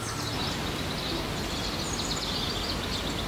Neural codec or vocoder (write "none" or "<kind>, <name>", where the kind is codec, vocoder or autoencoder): none